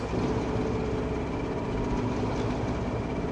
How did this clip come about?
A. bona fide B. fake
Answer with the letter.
A